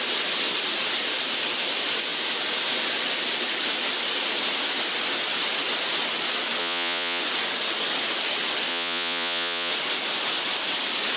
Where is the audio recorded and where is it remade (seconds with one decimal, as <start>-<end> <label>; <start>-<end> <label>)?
0.0-6.6 recorded; 6.6-7.2 remade; 7.2-8.7 recorded; 8.7-9.7 remade; 9.7-11.2 recorded